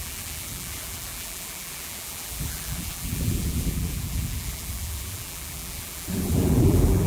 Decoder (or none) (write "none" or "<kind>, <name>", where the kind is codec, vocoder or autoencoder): vocoder, BigVGAN v2